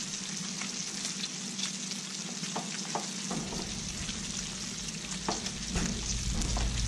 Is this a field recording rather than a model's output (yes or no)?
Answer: yes